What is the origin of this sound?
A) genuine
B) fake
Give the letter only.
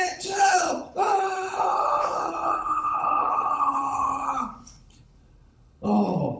B